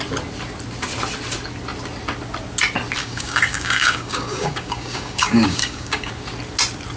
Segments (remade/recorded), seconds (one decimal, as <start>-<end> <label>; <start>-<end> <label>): 0.0-3.0 recorded; 3.0-6.1 remade; 6.1-7.0 recorded